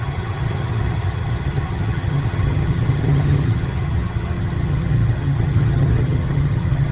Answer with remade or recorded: remade